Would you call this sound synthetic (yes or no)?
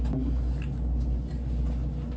no